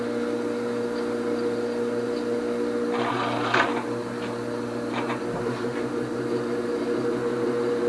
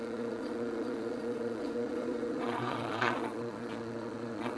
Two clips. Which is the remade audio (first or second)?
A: second